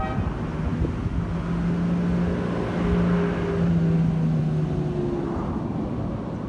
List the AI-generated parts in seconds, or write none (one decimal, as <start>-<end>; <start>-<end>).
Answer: none